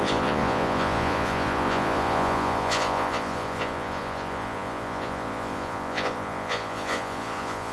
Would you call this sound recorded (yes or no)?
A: no